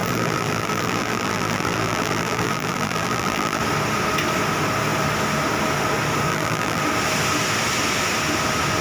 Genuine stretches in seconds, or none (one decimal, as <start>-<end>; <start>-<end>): 3.6-6.3; 6.8-8.8